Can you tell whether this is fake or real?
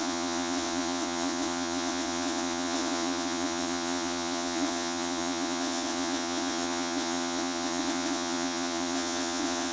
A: fake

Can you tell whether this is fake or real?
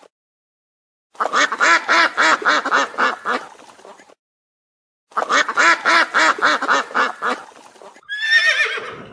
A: real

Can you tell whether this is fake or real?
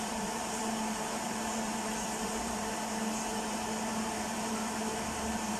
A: fake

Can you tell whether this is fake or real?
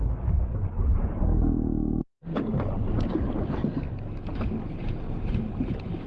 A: real